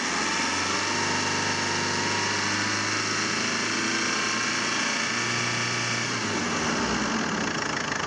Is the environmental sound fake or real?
real